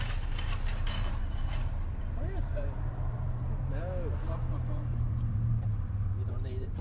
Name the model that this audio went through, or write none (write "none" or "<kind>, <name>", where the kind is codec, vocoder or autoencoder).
vocoder, BigVGAN v2